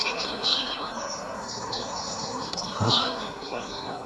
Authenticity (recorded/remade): remade